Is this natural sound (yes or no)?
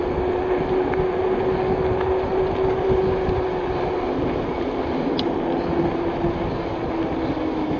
yes